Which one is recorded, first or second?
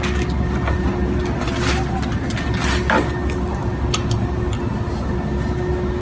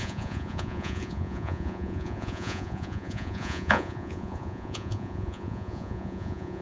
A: first